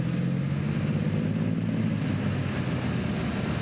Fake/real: real